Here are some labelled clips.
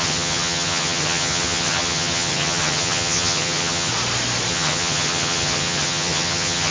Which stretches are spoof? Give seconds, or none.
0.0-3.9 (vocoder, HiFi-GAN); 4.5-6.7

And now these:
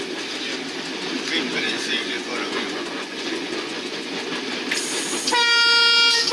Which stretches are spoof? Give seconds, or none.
1.5-4.3 (vocoder, Vocos)

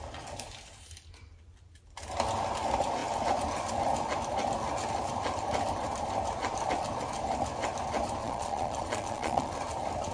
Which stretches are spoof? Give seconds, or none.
8.2-9.5 (vocoder, Vocos)

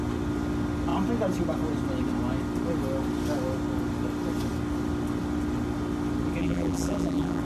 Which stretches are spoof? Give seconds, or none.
6.4-7.4 (vocoder, BigVGAN v2)

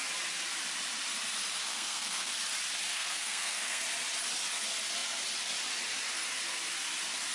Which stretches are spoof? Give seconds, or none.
1.7-2.3 (codec, SNAC); 2.9-3.8